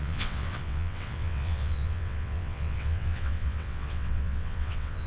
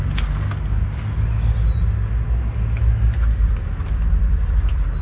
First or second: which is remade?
first